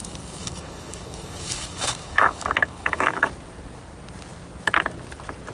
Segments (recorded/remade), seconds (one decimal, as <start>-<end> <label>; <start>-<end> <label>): 0.0-3.3 remade; 3.3-5.5 recorded